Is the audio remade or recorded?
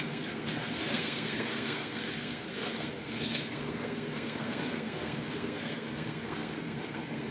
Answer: remade